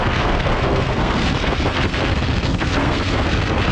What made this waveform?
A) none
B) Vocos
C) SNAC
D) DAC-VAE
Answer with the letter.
C